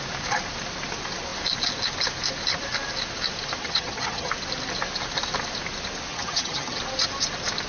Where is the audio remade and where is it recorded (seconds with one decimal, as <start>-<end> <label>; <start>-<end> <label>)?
0.0-3.6 recorded; 3.6-4.3 remade; 4.3-6.1 recorded; 6.1-6.8 remade; 6.8-7.7 recorded